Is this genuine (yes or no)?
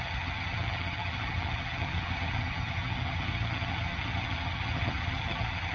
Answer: no